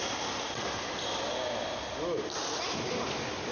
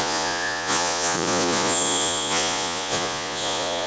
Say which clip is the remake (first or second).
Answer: second